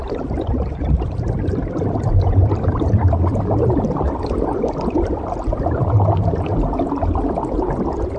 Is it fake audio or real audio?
fake